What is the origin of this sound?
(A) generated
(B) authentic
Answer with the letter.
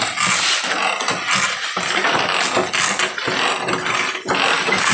B